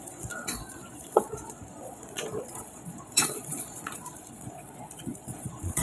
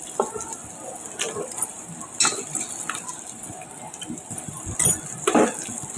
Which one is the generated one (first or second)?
first